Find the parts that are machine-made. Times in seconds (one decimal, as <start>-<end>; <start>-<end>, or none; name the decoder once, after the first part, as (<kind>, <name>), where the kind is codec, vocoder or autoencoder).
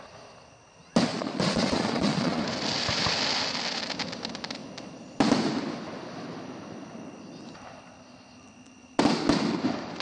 1.1-2.4 (vocoder, Vocos)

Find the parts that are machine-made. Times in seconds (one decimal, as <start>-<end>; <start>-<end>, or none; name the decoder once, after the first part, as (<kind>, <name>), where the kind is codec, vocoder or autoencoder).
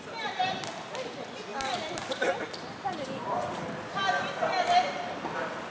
none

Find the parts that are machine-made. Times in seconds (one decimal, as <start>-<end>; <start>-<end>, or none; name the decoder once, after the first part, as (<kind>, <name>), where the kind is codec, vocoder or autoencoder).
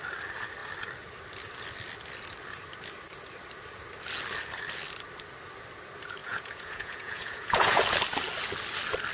6.2-7.8 (vocoder, Vocos)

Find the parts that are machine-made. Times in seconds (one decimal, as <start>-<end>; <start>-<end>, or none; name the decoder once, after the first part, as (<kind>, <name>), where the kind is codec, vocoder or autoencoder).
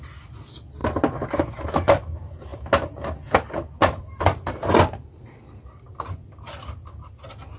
none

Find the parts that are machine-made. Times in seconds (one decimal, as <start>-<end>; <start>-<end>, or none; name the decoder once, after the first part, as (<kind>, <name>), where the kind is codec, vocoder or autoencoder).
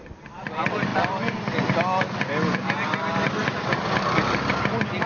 none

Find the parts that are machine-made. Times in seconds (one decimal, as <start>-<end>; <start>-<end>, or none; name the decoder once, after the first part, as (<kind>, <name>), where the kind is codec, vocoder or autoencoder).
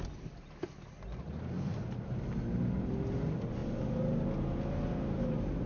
none